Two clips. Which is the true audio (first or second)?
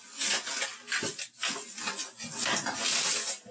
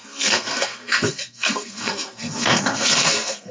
first